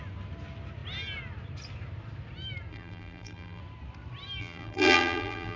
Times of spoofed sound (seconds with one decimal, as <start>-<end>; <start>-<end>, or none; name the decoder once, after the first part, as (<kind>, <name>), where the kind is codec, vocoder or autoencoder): 2.7-3.6 (vocoder, BigVGAN v2); 4.4-5.6